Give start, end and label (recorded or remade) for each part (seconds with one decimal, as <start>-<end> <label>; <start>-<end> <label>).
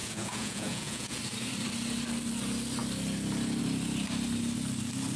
0.0-1.2 remade; 1.2-5.2 recorded